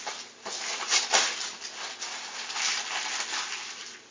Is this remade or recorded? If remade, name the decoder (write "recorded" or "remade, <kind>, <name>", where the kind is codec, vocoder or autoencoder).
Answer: recorded